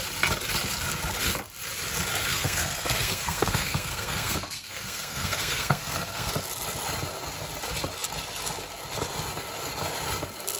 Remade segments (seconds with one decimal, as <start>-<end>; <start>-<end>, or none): 2.3-6.3